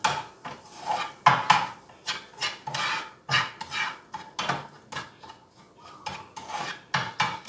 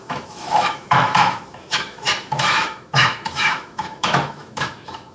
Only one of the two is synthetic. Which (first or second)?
second